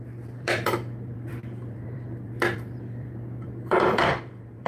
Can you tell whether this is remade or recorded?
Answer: remade